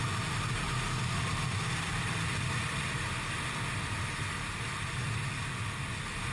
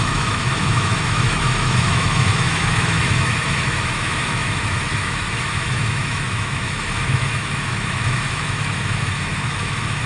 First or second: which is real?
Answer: first